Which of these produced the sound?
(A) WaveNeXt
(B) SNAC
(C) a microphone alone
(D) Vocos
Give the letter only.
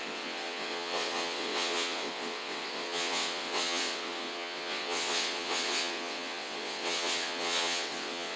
A